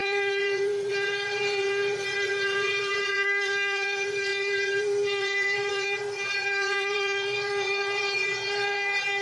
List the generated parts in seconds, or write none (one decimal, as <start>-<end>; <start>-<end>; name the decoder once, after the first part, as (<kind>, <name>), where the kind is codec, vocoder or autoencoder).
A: 0.0-9.2 (vocoder, Vocos)